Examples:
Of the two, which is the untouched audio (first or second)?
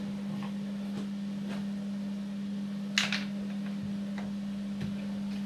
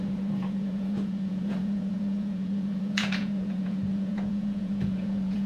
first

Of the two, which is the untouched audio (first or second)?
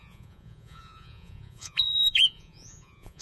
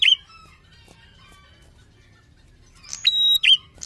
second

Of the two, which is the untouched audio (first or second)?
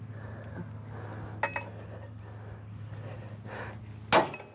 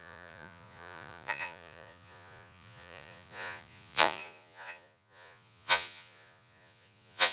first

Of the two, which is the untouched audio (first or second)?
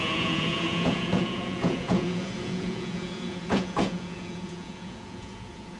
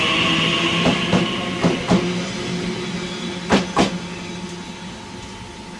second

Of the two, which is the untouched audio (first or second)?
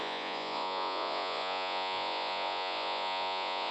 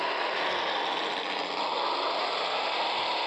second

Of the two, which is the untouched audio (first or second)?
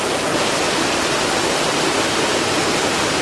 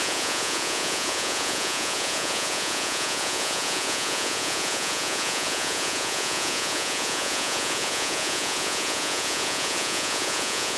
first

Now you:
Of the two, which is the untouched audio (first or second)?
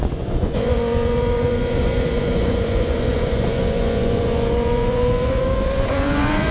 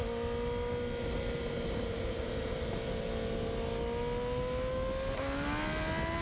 second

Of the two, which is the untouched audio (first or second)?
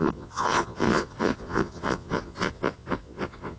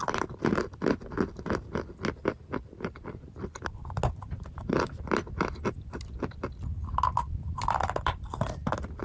second